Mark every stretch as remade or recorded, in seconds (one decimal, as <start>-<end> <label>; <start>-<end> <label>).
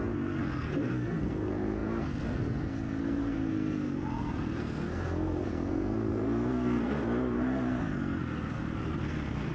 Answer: 0.0-9.5 remade